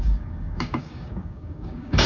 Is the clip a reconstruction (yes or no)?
yes